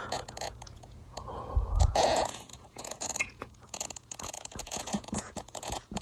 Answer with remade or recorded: remade